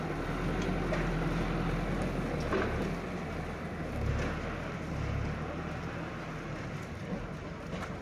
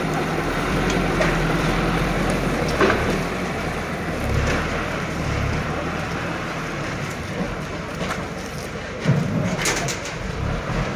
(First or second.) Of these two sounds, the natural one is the first